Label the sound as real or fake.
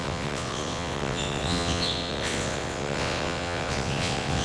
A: fake